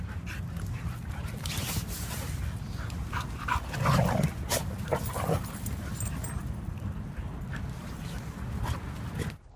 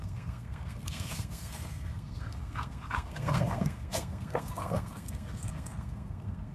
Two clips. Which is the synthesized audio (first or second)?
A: second